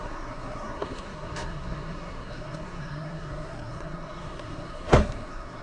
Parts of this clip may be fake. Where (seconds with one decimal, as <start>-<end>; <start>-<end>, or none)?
0.0-5.6